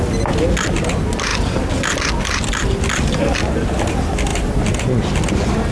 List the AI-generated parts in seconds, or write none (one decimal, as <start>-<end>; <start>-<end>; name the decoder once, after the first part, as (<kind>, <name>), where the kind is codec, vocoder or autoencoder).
none